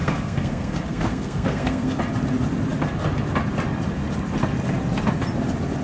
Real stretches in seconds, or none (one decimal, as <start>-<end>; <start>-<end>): 2.0-5.8